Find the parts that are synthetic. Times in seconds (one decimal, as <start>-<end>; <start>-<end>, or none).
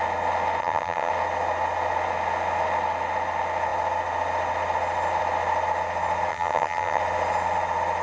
0.6-1.1; 6.3-7.0